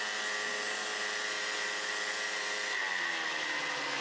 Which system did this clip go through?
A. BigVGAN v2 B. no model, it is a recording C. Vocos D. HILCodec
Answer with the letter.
B